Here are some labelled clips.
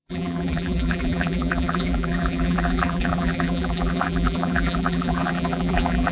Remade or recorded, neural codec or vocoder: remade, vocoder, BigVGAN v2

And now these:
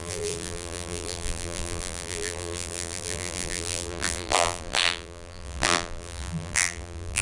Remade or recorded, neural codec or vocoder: remade, vocoder, BigVGAN v2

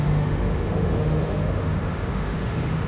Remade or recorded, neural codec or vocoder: remade, autoencoder, DAC-VAE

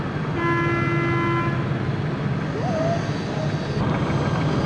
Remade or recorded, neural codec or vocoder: recorded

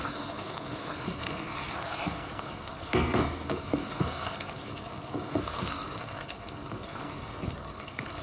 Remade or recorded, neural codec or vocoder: remade, codec, SNAC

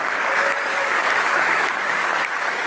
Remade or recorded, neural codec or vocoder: remade, codec, DAC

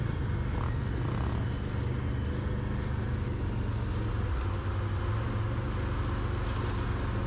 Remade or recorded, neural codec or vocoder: recorded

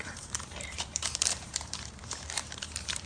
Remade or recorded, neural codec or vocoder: remade, vocoder, BigVGAN v2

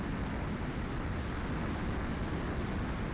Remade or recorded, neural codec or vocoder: recorded